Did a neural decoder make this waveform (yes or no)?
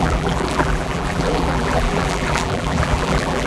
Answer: yes